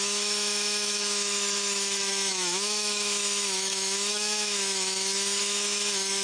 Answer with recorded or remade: remade